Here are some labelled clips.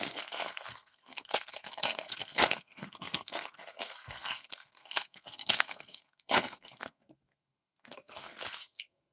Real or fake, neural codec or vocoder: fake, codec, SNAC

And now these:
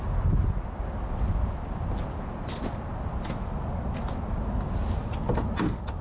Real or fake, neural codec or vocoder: real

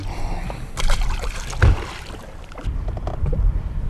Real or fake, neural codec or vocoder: real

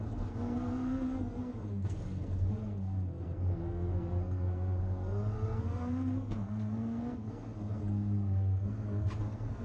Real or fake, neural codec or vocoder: fake, codec, SNAC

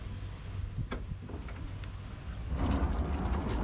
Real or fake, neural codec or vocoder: real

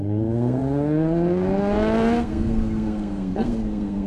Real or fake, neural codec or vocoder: fake, codec, SNAC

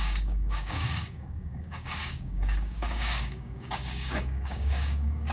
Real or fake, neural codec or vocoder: fake, codec, DAC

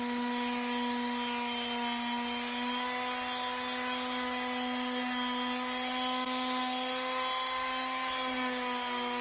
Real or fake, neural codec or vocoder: real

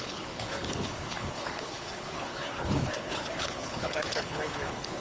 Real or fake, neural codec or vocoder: fake, codec, HILCodec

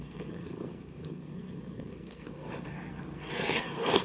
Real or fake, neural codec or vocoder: fake, codec, SNAC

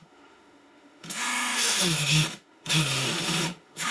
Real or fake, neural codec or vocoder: fake, autoencoder, DAC-VAE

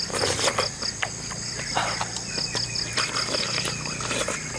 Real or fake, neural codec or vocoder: real